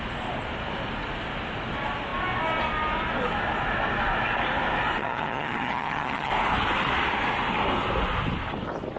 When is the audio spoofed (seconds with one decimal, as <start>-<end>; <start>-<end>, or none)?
5.0-6.3